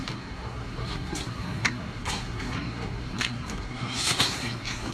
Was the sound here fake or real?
fake